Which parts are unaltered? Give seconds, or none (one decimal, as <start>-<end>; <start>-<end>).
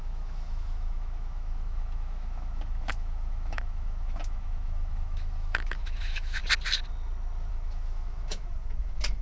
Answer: 6.4-7.5